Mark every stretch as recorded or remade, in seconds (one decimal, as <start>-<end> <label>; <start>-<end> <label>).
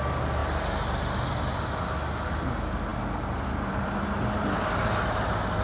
0.0-5.6 recorded